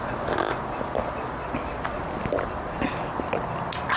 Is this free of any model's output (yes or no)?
yes